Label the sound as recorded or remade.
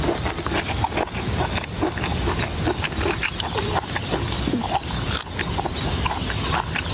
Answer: recorded